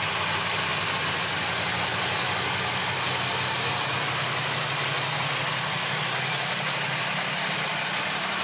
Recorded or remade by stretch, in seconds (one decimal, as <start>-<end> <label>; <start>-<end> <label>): 0.0-8.4 recorded